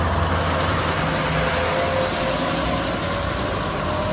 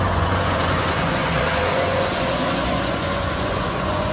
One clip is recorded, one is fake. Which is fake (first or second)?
second